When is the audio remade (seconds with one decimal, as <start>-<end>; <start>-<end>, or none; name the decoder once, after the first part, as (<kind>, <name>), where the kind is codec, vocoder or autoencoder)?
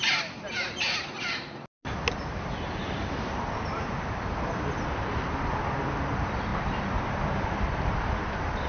none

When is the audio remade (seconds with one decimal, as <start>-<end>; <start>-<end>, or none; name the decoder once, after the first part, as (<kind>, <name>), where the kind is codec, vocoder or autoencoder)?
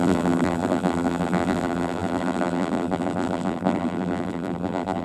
0.0-5.0 (vocoder, BigVGAN v2)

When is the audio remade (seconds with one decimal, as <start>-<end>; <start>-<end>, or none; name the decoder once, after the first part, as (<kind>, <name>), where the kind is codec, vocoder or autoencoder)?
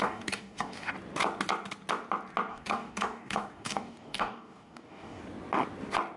0.0-0.9 (codec, DAC); 2.5-5.2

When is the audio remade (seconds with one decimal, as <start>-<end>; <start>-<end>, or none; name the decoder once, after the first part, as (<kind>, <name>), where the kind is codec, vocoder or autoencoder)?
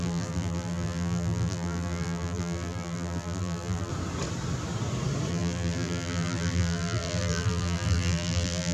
0.0-3.9 (vocoder, BigVGAN v2); 5.3-8.7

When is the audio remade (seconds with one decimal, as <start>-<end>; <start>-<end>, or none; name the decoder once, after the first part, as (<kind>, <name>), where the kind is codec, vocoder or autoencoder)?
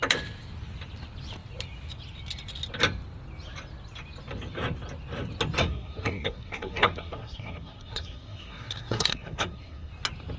5.6-9.9 (codec, SNAC)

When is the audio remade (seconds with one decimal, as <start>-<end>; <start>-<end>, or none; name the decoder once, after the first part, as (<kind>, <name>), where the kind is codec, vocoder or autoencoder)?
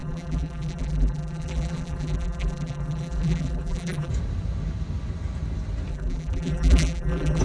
0.0-4.1 (vocoder, BigVGAN v2); 5.9-7.4